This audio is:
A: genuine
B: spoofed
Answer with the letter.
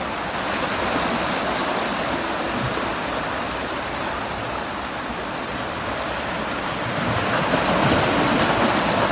A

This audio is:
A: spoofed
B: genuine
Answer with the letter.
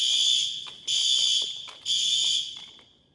B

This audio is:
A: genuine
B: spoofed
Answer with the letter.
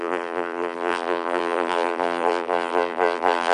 B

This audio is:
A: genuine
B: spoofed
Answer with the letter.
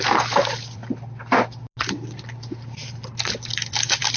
A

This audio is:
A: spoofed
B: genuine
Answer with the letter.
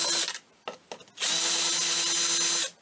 B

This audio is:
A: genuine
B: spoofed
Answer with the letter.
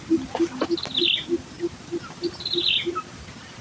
A